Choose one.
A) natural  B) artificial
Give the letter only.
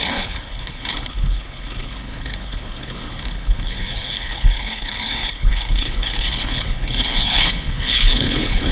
B